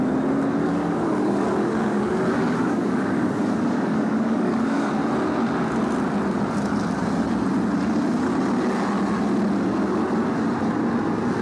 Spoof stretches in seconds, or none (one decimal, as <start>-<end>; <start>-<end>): 0.6-5.0